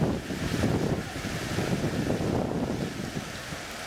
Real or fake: real